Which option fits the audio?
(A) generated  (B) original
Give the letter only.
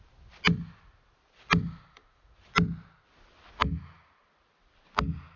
B